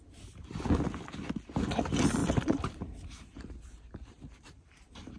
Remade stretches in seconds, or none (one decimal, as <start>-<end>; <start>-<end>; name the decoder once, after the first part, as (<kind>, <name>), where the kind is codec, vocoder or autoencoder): 2.2-5.2 (vocoder, BigVGAN v2)